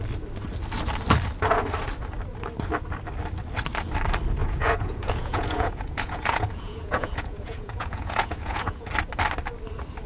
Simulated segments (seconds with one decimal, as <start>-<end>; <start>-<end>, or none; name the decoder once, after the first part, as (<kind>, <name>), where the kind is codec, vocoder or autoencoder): 4.4-8.9 (vocoder, Vocos)

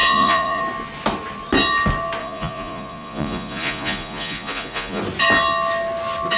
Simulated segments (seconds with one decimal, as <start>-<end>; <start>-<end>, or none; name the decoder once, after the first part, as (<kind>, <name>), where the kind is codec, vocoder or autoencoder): 0.0-0.6 (vocoder, Vocos); 2.2-5.0

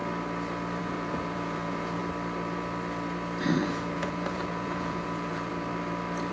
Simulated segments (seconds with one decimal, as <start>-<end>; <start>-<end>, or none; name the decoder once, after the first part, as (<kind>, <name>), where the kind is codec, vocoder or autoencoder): 0.8-2.0 (vocoder, Vocos); 3.4-5.5

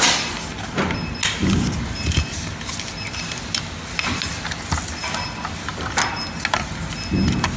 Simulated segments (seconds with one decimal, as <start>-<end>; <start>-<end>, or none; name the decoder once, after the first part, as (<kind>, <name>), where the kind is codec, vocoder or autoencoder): none

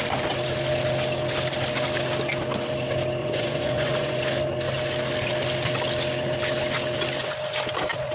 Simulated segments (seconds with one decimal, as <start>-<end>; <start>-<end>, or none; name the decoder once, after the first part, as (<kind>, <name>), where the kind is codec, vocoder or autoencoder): 3.2-4.2 (vocoder, Vocos)